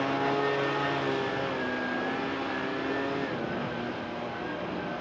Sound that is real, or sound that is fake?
real